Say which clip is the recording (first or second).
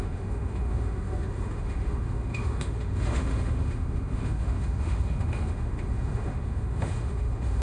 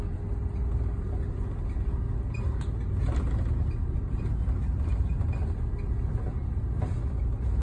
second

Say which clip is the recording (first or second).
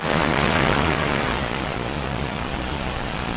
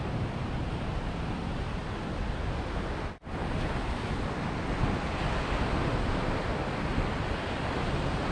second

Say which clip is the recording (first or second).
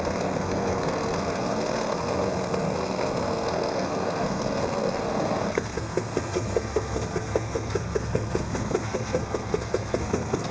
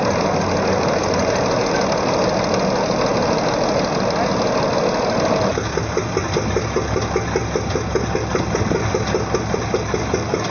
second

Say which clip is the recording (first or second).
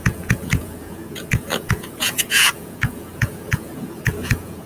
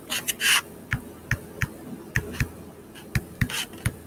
second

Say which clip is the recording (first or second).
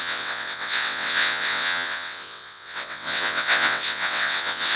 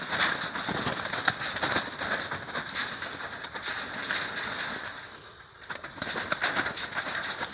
second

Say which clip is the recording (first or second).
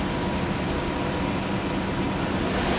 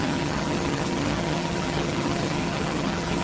first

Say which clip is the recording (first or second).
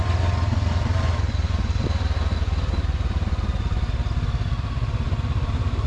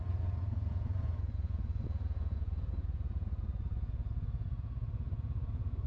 first